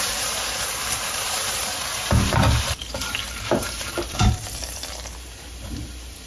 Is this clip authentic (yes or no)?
no